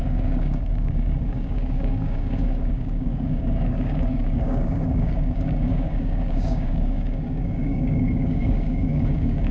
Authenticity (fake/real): fake